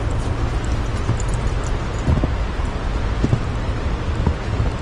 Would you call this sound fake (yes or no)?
no